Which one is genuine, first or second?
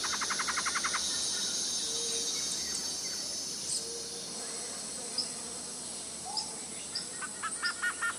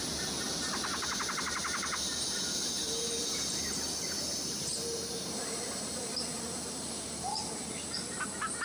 first